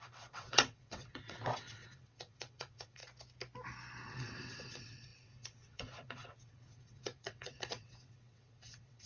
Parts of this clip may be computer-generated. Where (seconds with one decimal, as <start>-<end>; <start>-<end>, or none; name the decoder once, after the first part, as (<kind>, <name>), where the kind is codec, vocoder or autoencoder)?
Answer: 0.0-3.0 (vocoder, WaveNeXt); 4.0-9.1

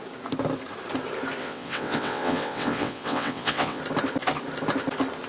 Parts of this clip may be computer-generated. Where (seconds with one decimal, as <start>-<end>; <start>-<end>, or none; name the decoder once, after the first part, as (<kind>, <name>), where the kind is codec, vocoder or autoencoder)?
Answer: 1.4-3.8 (vocoder, WaveNeXt)

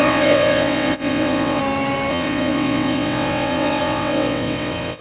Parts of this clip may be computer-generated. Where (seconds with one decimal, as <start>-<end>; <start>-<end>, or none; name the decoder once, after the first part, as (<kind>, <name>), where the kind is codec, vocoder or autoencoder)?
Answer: 0.0-1.6 (vocoder, WaveNeXt); 2.1-5.0

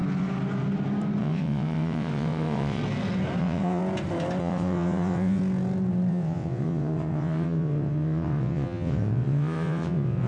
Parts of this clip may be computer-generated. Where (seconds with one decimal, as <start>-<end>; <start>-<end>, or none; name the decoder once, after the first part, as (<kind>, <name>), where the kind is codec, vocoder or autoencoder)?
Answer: 1.2-2.8 (vocoder, WaveNeXt); 3.4-3.8; 4.4-5.4; 6.1-10.3